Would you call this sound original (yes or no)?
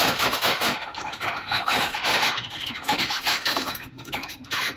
no